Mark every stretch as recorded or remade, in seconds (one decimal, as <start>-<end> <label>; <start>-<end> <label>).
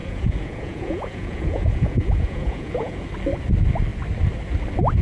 0.0-3.0 remade; 3.0-5.0 recorded